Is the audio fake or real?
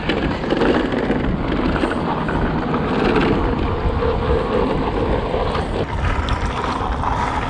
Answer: real